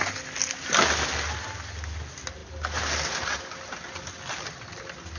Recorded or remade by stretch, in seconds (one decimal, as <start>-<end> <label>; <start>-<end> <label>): 0.0-5.2 recorded